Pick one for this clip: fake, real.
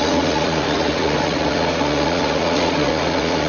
fake